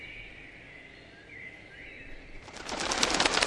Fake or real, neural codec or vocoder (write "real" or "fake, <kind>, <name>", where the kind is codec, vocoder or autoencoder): real